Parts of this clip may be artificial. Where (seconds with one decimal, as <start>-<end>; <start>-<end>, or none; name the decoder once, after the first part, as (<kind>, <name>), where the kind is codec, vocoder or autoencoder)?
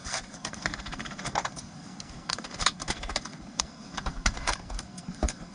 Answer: 0.0-5.5 (codec, SNAC)